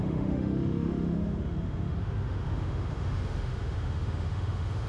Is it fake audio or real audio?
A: fake